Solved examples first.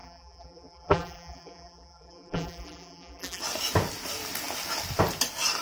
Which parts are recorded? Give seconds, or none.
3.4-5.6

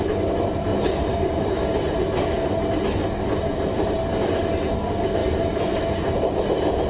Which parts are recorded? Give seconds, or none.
0.0-3.5; 4.4-5.2; 6.2-6.9